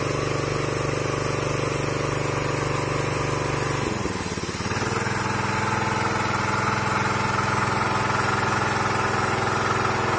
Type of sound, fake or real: real